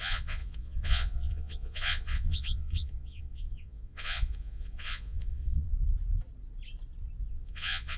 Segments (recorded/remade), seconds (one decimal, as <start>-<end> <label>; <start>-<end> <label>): 0.0-5.7 remade; 5.7-7.3 recorded; 7.3-8.0 remade